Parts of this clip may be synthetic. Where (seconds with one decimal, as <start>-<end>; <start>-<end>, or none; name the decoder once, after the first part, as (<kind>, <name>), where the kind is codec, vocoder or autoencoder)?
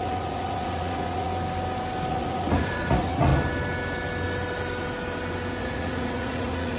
0.0-1.3 (vocoder, Vocos); 2.1-3.3; 5.6-6.8